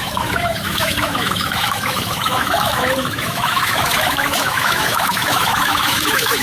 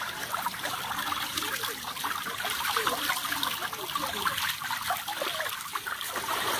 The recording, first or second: second